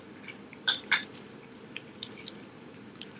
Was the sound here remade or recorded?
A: remade